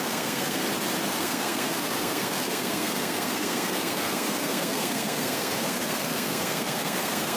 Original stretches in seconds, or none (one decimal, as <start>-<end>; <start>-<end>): 0.6-1.2